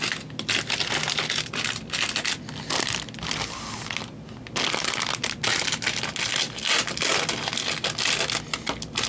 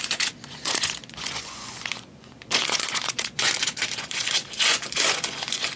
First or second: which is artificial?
second